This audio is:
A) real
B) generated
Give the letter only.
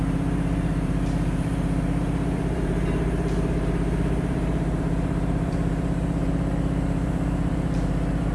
B